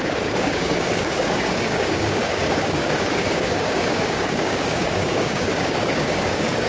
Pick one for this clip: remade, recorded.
remade